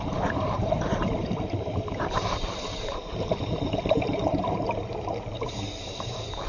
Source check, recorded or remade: remade